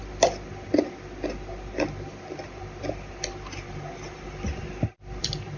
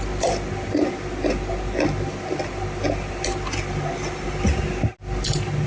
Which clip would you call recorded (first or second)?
second